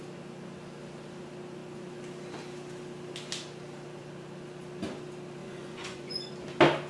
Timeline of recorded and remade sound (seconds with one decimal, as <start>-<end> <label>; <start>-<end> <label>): 0.0-5.4 recorded; 5.4-6.3 remade; 6.3-6.9 recorded